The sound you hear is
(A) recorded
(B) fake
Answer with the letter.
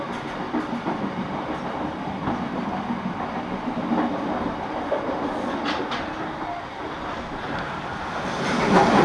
A